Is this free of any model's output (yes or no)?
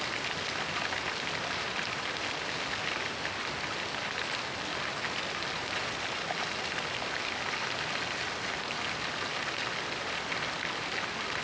yes